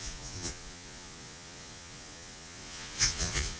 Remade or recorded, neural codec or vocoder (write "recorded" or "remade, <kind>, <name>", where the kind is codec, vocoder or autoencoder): remade, vocoder, Vocos